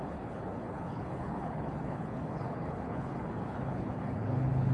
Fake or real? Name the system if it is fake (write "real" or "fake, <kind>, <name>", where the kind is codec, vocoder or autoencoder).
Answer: fake, codec, HILCodec